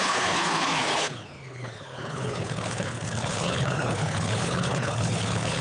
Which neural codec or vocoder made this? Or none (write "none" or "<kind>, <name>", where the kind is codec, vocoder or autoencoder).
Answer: codec, HILCodec